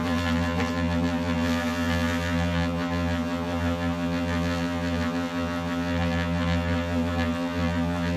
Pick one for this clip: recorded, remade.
remade